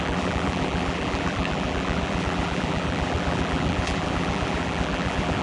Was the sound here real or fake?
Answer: fake